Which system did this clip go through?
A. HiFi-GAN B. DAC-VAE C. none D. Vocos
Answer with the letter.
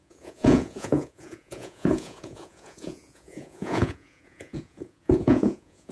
D